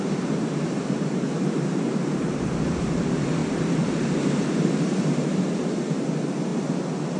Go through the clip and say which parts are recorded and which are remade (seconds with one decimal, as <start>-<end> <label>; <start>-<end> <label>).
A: 0.0-3.4 remade; 3.4-4.4 recorded; 4.4-6.5 remade; 6.5-7.2 recorded